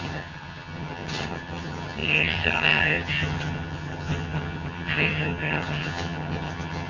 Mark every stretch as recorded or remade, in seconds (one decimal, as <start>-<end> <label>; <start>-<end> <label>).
0.0-6.9 remade

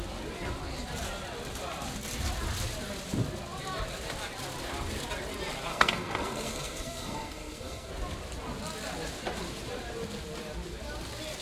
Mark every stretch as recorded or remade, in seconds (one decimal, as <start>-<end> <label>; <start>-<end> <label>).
0.0-5.7 recorded; 5.7-7.9 remade; 7.9-11.4 recorded